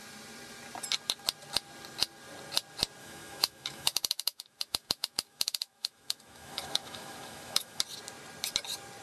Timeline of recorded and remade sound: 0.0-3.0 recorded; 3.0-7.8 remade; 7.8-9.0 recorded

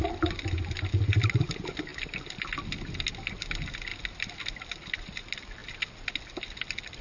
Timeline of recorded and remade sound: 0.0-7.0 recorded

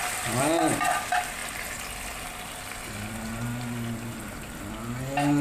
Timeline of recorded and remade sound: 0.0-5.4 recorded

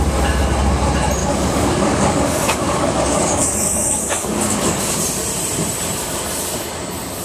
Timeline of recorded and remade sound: 0.0-1.2 recorded; 1.2-5.0 remade; 5.0-7.2 recorded

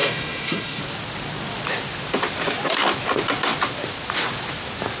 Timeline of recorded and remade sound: 0.0-0.8 remade; 0.8-5.0 recorded